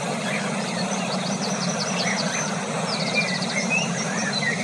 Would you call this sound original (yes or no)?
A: yes